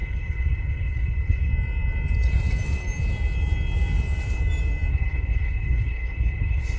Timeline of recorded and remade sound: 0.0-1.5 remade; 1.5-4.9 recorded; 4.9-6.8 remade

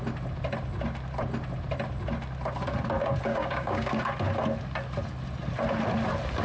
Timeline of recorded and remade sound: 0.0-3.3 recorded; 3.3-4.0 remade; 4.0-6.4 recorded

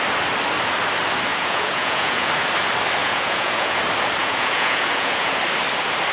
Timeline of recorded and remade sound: 0.0-1.3 recorded; 1.3-2.3 remade; 2.3-3.0 recorded; 3.0-3.8 remade; 3.8-4.2 recorded; 4.2-5.4 remade; 5.4-6.1 recorded

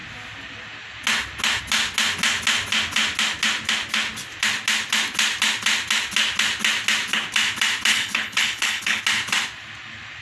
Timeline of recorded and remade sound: 0.0-7.9 recorded; 7.9-9.0 remade; 9.0-10.2 recorded